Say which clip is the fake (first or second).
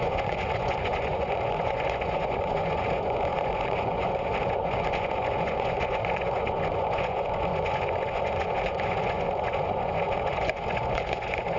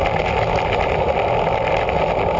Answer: first